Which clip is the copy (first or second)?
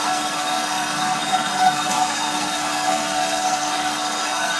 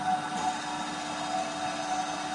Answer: first